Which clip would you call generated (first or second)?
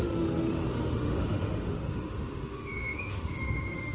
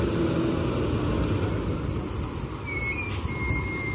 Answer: first